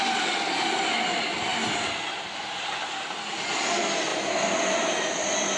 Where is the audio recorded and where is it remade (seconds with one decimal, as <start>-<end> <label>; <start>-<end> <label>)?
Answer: 0.0-5.6 recorded